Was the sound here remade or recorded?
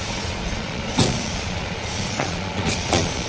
remade